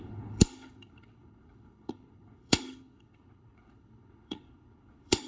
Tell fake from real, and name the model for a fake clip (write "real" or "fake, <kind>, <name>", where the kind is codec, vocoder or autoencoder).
fake, codec, HILCodec